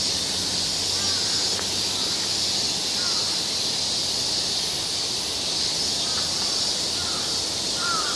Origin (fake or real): real